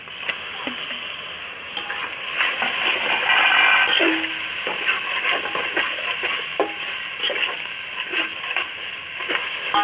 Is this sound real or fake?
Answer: real